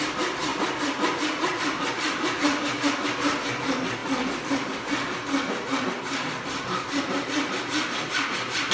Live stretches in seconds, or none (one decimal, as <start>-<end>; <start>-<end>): 0.0-8.7